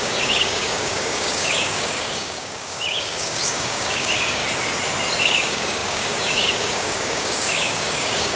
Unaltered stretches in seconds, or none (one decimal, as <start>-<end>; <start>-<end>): 4.4-5.2